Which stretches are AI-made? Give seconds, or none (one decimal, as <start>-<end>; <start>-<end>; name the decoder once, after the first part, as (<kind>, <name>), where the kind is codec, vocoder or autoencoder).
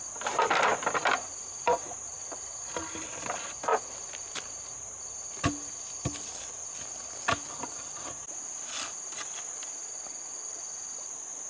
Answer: 3.7-5.0 (vocoder, BigVGAN v2)